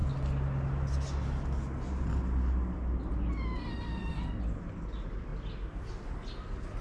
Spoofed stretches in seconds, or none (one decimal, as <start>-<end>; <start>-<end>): none